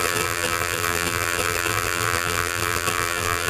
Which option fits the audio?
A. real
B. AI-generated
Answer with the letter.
B